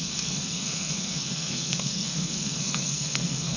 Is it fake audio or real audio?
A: fake